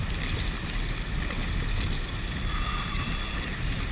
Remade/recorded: recorded